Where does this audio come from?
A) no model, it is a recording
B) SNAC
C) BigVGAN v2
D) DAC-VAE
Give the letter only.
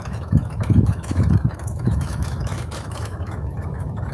D